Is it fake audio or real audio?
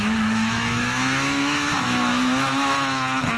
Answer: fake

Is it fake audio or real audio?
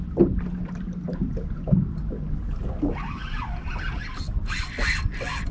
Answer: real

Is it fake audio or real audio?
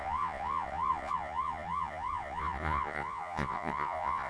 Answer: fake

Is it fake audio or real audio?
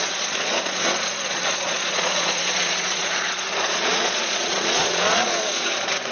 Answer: fake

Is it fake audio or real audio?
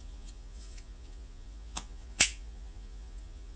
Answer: fake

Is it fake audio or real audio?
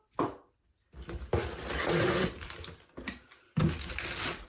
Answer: real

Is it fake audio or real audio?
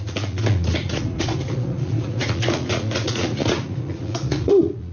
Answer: fake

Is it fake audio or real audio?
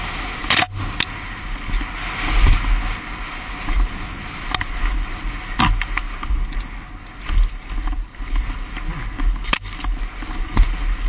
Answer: real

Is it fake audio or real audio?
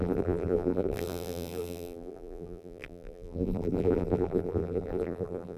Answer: fake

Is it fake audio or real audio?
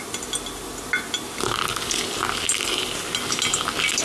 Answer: real